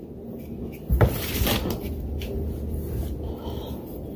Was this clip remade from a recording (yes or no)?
no